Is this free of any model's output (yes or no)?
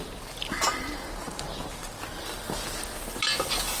yes